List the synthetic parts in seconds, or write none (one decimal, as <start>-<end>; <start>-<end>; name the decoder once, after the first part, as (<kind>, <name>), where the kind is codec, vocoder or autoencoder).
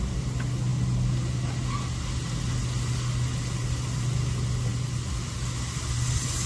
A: none